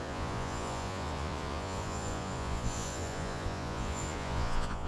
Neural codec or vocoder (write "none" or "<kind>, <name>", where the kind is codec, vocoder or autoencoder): vocoder, Vocos